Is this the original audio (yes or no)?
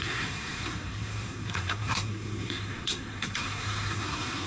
no